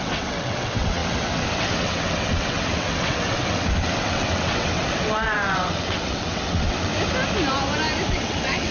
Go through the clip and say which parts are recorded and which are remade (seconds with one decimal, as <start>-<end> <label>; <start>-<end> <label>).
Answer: 0.0-6.9 remade; 6.9-8.1 recorded; 8.1-8.7 remade